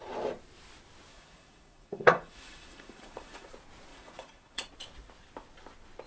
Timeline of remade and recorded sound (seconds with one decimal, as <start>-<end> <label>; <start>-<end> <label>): 0.0-1.1 recorded; 1.1-3.5 remade; 3.5-3.9 recorded; 3.9-4.7 remade; 4.7-6.1 recorded